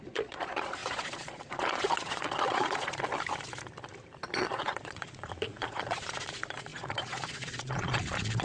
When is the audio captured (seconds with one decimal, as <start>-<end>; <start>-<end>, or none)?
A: 3.1-4.4